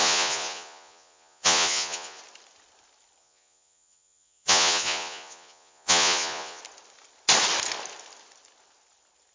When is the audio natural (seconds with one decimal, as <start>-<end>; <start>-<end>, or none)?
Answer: 2.2-3.2; 6.6-9.3